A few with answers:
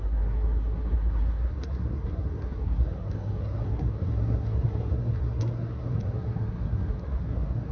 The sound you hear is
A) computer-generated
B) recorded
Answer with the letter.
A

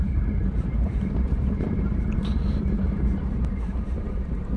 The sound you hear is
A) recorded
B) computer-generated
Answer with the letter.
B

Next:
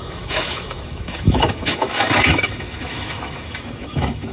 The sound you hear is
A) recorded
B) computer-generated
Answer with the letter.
B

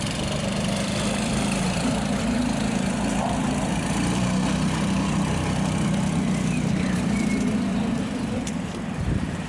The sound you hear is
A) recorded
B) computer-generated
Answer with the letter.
B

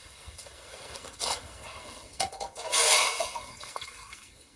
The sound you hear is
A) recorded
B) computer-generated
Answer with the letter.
B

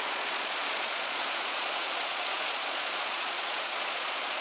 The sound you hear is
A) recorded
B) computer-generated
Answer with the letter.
B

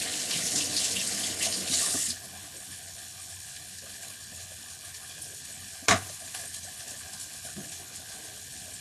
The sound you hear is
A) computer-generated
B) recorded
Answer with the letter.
A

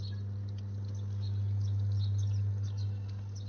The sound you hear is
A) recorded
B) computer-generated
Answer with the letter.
A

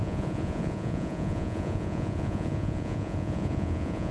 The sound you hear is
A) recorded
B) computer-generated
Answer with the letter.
B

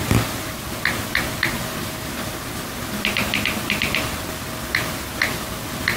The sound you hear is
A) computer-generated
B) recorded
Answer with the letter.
B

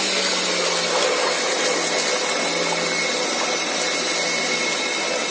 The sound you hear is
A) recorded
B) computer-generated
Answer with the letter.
A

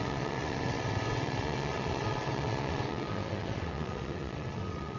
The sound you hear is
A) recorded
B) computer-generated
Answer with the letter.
B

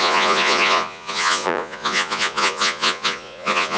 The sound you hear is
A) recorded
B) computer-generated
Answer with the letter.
B